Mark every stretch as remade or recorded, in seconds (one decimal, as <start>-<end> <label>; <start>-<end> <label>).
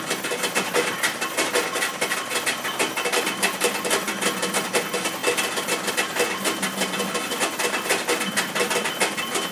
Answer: 0.0-9.5 recorded